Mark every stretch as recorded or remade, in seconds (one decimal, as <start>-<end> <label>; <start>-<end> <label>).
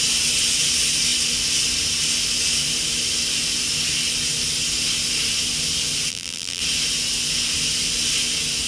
0.0-6.1 recorded; 6.1-6.6 remade; 6.6-8.7 recorded